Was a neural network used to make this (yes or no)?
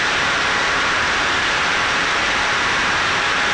yes